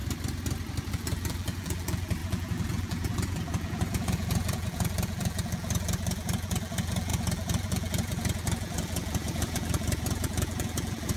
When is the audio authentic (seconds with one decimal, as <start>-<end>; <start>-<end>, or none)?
0.0-0.9